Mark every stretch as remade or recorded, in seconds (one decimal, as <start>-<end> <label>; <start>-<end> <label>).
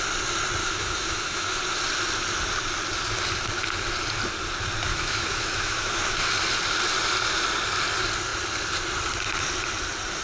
0.0-0.6 recorded; 0.6-1.6 remade; 1.6-4.9 recorded; 4.9-6.3 remade; 6.3-10.2 recorded